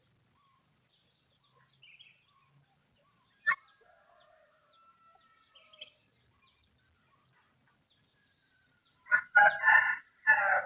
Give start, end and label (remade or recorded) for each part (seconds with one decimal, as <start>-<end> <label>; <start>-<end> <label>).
0.0-10.7 recorded